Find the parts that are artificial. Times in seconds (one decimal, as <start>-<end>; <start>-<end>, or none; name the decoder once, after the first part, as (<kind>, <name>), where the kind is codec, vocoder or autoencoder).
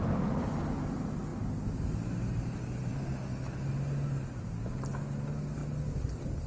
none